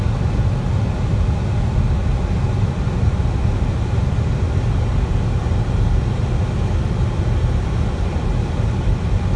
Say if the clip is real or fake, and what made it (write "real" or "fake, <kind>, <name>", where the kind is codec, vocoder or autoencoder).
real